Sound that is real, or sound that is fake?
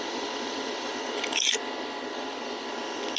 real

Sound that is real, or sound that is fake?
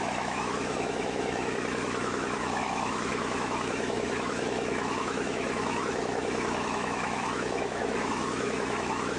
fake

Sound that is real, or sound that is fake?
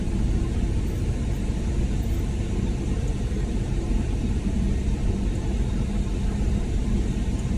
real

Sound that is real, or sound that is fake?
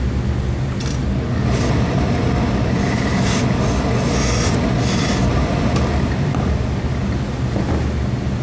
real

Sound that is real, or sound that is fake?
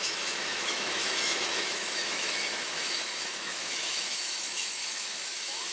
fake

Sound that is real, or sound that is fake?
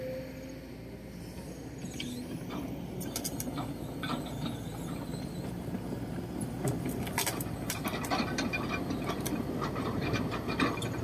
real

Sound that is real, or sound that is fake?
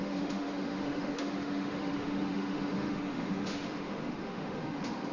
fake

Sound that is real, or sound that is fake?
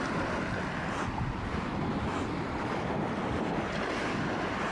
real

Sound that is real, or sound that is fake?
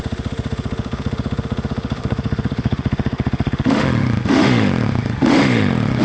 fake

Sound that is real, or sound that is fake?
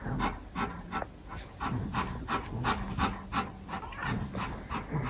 real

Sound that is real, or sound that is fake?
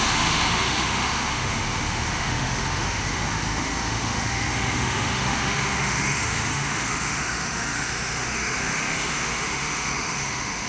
fake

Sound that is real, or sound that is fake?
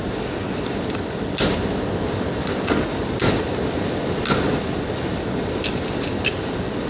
real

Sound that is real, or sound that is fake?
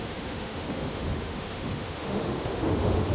fake